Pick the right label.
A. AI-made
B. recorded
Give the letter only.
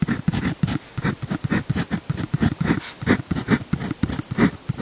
B